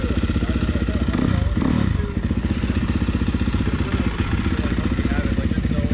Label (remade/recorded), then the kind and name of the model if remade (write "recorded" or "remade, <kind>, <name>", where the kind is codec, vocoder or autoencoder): recorded